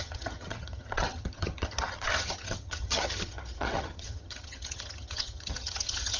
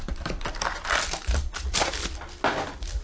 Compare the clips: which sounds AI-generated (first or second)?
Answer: first